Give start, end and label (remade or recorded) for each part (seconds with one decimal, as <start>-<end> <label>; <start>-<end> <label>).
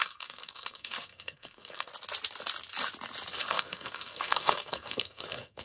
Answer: 0.0-1.9 remade; 1.9-3.3 recorded; 3.3-5.6 remade